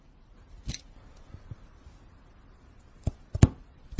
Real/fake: real